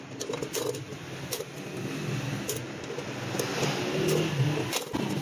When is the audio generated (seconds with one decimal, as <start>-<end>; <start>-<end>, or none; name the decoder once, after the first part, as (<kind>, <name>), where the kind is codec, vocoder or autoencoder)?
none